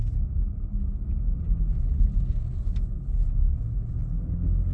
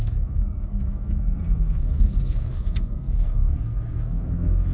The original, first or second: first